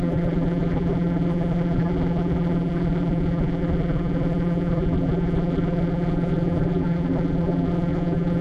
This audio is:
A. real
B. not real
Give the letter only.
B